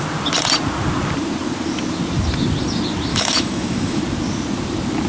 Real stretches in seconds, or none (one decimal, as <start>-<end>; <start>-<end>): 0.0-3.1; 4.0-5.1